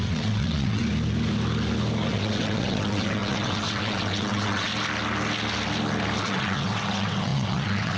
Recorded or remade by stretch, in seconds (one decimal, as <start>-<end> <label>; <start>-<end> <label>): 0.0-0.8 remade; 0.8-2.1 recorded; 2.1-4.7 remade; 4.7-6.2 recorded; 6.2-8.0 remade